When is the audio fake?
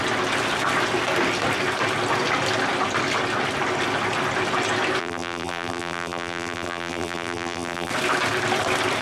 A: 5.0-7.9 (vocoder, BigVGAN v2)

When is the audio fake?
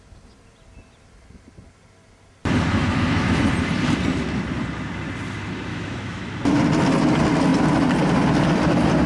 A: 2.7-3.4 (autoencoder, DAC-VAE); 5.7-6.4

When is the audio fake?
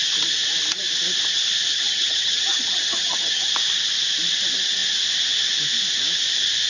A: 1.7-3.5 (vocoder, HiFi-GAN)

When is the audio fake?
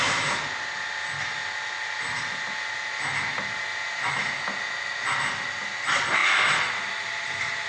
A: none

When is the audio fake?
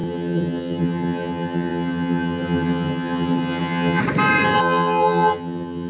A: 0.0-4.0 (vocoder, HiFi-GAN); 4.6-5.9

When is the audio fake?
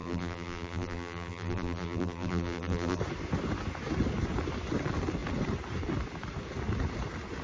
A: 0.0-3.0 (vocoder, BigVGAN v2)